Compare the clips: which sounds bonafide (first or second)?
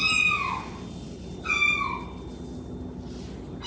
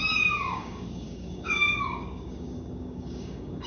first